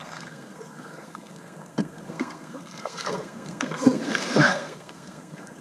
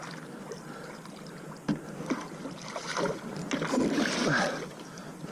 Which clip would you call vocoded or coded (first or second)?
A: first